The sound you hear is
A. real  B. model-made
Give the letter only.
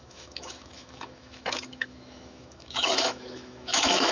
B